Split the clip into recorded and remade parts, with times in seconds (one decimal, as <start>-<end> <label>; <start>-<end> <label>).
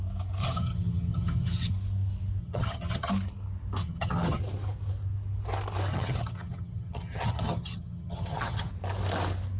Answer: 0.0-0.4 recorded; 0.4-1.7 remade; 1.7-2.4 recorded; 2.4-3.1 remade; 3.1-3.8 recorded; 3.8-4.4 remade; 4.4-5.9 recorded; 5.9-8.7 remade; 8.7-9.6 recorded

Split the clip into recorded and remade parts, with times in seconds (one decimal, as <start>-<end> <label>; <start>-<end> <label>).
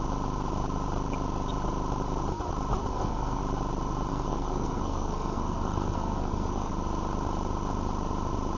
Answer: 0.0-2.9 recorded; 2.9-3.4 remade; 3.4-4.1 recorded; 4.1-6.7 remade; 6.7-8.6 recorded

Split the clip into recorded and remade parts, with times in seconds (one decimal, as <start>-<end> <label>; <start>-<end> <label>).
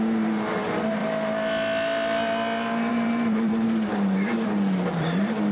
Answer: 0.0-1.0 remade; 1.0-2.9 recorded; 2.9-5.5 remade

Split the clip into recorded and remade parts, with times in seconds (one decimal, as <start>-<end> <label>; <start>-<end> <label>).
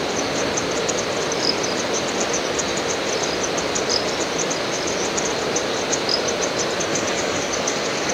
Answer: 0.0-6.9 recorded; 6.9-8.1 remade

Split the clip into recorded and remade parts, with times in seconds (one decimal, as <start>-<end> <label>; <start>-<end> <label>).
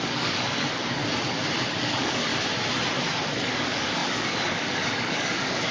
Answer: 0.0-1.0 remade; 1.0-1.7 recorded; 1.7-2.3 remade; 2.3-3.3 recorded; 3.3-5.7 remade